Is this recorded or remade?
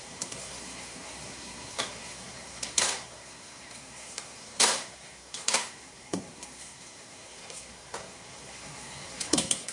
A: remade